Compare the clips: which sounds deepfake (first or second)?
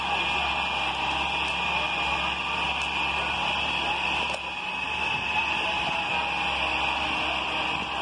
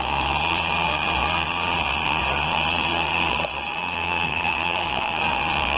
second